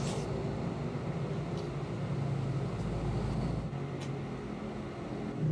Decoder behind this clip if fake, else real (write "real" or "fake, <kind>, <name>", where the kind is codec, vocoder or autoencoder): real